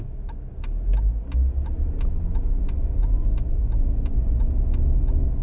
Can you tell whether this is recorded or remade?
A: recorded